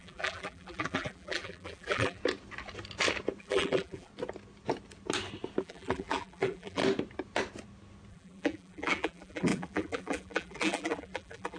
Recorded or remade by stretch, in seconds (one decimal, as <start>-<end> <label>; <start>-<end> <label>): 0.0-2.2 remade; 2.2-3.4 recorded; 3.4-4.1 remade; 4.1-5.6 recorded; 5.6-6.8 remade; 6.8-8.1 recorded; 8.1-11.6 remade